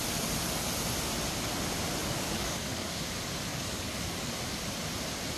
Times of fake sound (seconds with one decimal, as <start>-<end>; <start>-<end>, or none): 2.0-3.0; 3.5-4.4